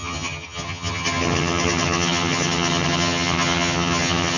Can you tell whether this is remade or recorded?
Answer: remade